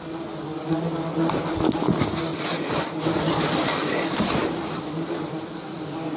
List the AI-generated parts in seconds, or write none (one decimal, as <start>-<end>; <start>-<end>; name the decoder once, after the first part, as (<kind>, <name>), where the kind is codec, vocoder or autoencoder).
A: 2.3-6.2 (vocoder, BigVGAN v2)